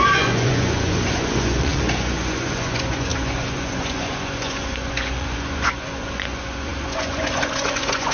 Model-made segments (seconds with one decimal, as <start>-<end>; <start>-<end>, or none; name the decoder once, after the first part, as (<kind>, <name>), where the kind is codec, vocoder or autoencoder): 0.0-8.1 (vocoder, Vocos)